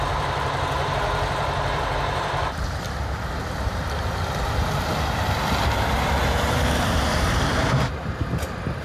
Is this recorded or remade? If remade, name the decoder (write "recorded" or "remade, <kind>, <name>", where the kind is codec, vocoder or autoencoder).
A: remade, vocoder, BigVGAN v2